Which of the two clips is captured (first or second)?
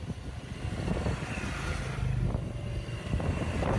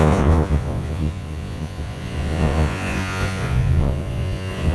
first